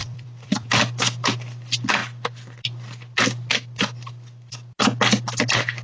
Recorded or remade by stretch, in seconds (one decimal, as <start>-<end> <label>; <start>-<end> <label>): 0.0-0.7 remade; 0.7-5.8 recorded